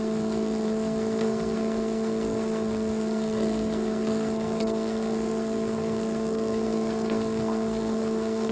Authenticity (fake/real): fake